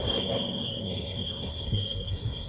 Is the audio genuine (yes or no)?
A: no